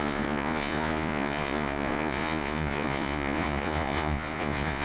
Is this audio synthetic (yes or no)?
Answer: yes